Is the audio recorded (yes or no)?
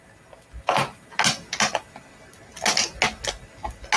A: yes